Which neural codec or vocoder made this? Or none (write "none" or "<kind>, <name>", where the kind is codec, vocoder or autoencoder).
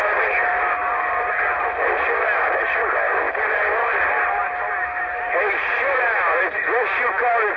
none